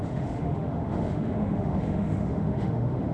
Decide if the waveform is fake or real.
fake